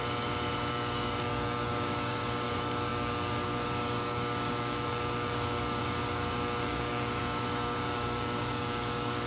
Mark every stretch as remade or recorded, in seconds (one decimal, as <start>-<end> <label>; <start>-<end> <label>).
0.0-0.7 recorded; 0.7-9.3 remade